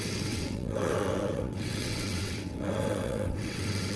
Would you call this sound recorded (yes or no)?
no